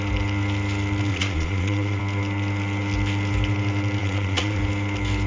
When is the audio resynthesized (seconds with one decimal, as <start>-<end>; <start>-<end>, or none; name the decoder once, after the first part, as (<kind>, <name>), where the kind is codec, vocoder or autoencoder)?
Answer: 1.1-2.0 (vocoder, Vocos); 4.0-4.6